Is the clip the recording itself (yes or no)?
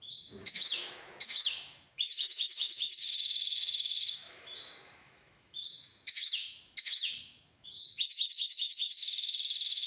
no